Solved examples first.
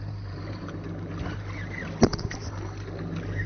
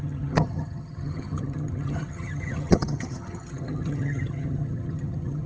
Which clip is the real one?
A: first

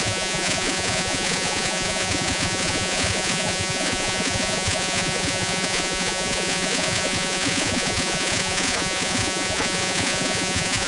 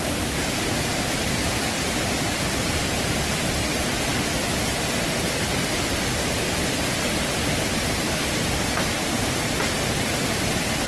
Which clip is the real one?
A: second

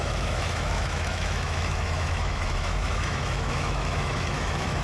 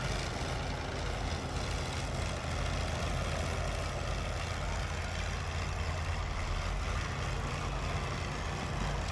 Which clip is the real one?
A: second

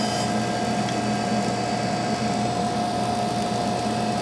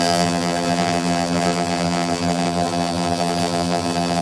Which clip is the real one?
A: first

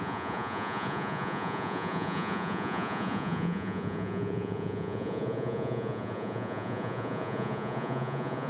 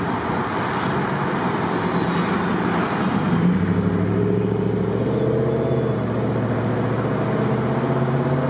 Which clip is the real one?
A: second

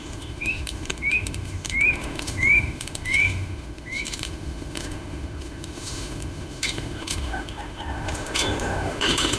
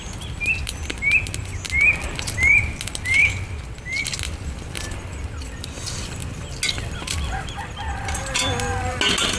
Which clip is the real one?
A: second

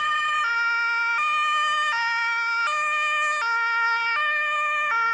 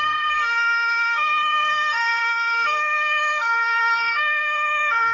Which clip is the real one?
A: first